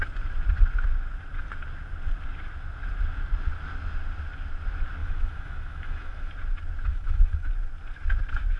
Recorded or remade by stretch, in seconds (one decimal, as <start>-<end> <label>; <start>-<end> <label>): 0.0-5.0 recorded; 5.0-6.3 remade; 6.3-6.9 recorded; 6.9-7.5 remade; 7.5-8.6 recorded